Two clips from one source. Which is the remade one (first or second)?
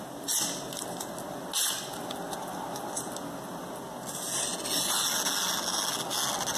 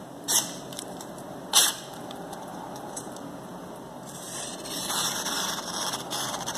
second